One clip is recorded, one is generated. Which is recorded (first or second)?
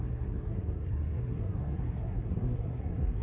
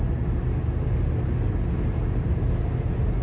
second